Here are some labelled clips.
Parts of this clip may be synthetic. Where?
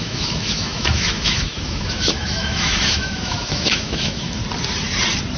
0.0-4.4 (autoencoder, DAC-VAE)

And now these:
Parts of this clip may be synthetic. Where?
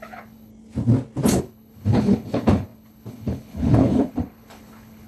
0.0-0.5 (codec, HILCodec); 1.4-5.1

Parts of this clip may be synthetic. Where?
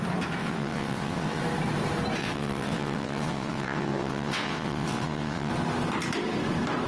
0.4-1.4 (vocoder, WaveNeXt); 2.2-5.5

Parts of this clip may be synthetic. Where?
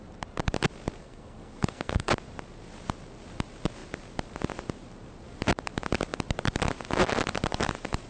1.0-2.1 (codec, SNAC)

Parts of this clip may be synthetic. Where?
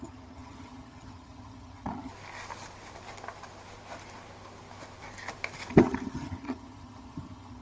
0.0-2.1 (vocoder, HiFi-GAN); 5.7-7.6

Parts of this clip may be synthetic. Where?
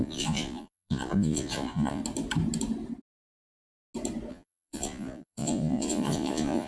0.0-2.0 (vocoder, Vocos); 4.3-6.7